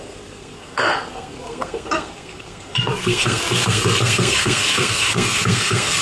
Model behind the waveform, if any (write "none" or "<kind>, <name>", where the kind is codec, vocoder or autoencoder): codec, SNAC